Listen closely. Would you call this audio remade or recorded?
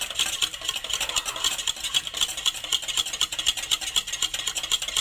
recorded